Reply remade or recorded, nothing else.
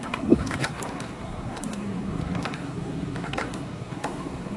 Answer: remade